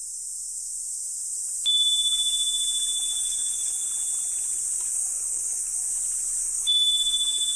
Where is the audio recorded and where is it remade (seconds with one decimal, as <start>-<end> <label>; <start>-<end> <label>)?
0.0-3.2 recorded; 3.2-3.9 remade; 3.9-4.9 recorded; 4.9-5.9 remade; 5.9-6.4 recorded; 6.4-7.6 remade